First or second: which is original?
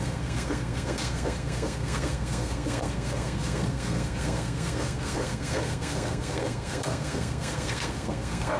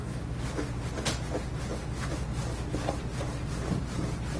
second